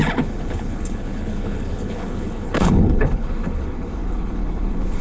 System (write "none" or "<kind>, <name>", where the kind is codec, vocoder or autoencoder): codec, HILCodec